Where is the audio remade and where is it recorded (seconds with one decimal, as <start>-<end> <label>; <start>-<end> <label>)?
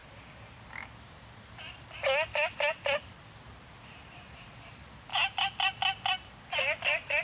0.0-7.2 recorded